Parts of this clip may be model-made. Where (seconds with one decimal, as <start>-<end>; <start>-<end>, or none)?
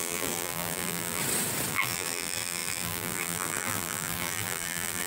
0.0-1.2; 1.7-5.1